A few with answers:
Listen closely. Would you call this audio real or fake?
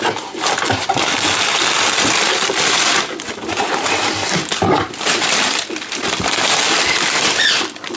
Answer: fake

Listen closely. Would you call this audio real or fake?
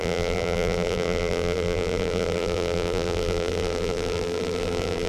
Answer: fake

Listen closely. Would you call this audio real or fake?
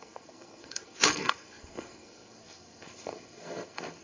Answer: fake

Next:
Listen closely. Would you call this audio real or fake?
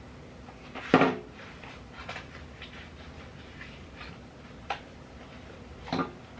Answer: real